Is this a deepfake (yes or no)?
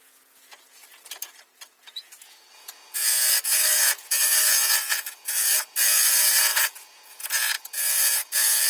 yes